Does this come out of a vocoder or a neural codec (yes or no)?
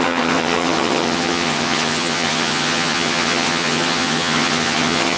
yes